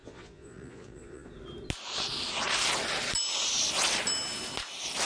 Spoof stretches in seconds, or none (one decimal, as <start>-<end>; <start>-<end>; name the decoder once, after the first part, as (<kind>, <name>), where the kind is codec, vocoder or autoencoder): 0.0-1.3 (vocoder, Vocos)